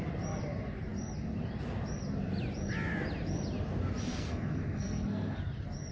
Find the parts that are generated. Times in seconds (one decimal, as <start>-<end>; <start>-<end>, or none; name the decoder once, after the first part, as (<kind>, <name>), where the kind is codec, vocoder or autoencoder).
4.1-5.4 (codec, SNAC)